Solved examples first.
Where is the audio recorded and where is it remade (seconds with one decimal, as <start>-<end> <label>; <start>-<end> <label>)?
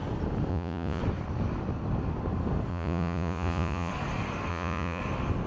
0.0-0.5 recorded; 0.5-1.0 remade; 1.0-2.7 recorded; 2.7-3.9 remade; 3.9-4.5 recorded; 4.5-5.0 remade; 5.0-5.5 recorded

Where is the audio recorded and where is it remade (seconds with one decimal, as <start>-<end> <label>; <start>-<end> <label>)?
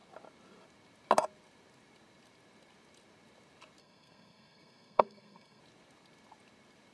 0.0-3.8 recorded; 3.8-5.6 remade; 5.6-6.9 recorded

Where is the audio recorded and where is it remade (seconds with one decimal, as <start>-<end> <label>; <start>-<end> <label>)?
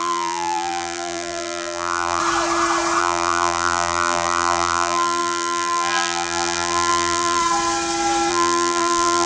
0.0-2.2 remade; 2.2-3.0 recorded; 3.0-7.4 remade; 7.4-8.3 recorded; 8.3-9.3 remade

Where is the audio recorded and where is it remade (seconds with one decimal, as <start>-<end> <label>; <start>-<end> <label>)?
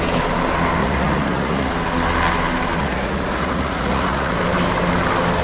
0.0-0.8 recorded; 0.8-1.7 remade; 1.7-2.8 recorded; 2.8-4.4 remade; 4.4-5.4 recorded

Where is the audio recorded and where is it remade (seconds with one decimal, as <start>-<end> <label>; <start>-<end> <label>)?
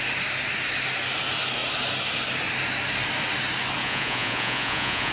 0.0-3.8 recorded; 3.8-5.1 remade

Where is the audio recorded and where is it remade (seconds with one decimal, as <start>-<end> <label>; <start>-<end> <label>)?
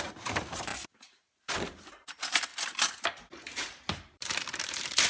0.0-2.5 remade; 2.5-3.0 recorded; 3.0-5.1 remade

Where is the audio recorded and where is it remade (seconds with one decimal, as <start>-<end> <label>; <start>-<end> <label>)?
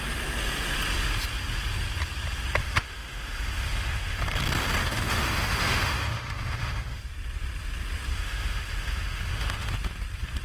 0.0-2.6 recorded; 2.6-4.2 remade; 4.2-4.8 recorded; 4.8-7.0 remade; 7.0-8.1 recorded; 8.1-9.7 remade; 9.7-10.4 recorded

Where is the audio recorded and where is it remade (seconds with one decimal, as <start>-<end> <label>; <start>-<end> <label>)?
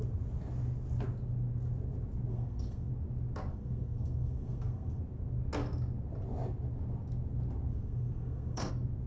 0.0-2.3 recorded; 2.3-2.9 remade; 2.9-3.5 recorded; 3.5-5.0 remade; 5.0-7.7 recorded; 7.7-8.7 remade; 8.7-9.1 recorded